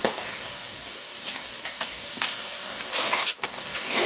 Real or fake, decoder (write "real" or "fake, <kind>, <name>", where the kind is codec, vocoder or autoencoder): fake, codec, DAC